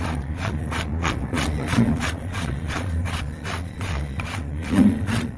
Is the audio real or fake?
fake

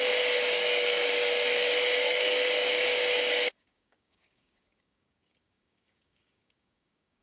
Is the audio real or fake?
fake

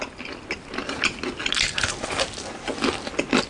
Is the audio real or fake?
real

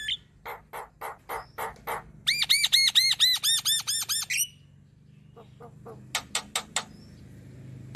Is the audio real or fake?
real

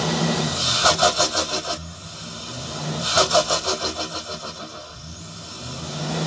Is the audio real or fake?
real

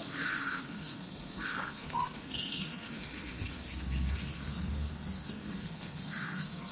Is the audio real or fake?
fake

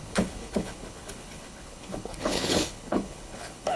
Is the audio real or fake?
fake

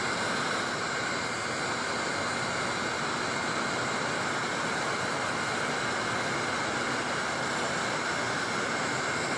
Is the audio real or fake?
real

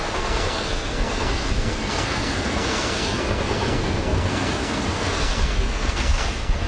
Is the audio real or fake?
fake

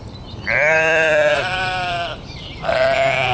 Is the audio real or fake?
fake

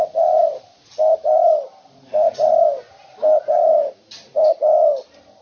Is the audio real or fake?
real